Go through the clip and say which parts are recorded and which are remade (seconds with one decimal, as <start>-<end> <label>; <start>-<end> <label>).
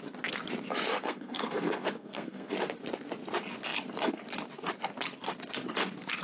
0.0-1.0 recorded; 1.0-2.5 remade; 2.5-6.2 recorded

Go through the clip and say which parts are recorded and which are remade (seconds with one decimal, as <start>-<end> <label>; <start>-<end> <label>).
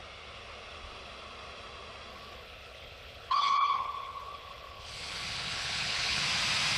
0.0-2.1 recorded; 2.1-6.2 remade; 6.2-6.8 recorded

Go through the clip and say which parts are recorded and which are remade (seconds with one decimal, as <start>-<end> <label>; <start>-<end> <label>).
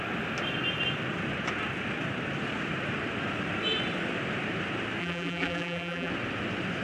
0.0-5.0 recorded; 5.0-6.1 remade; 6.1-6.8 recorded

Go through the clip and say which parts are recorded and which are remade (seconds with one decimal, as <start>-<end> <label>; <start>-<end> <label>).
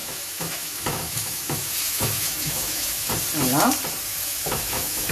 0.0-3.1 remade; 3.1-4.1 recorded; 4.1-5.1 remade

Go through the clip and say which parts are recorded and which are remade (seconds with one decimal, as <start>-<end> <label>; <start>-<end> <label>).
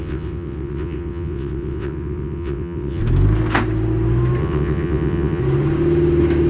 0.0-3.0 remade; 3.0-4.4 recorded; 4.4-5.4 remade; 5.4-6.5 recorded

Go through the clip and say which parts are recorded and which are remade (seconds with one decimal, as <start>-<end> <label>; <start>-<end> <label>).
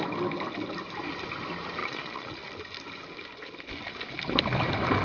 0.0-1.8 recorded; 1.8-2.5 remade; 2.5-5.0 recorded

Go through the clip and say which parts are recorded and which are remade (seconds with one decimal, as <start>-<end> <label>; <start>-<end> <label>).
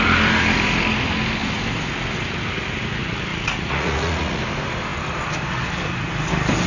0.0-3.3 recorded; 3.3-4.4 remade; 4.4-6.7 recorded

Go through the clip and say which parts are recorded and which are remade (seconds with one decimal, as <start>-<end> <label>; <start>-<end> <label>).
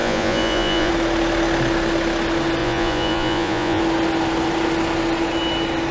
0.0-0.9 remade; 0.9-2.6 recorded; 2.6-3.8 remade; 3.8-5.9 recorded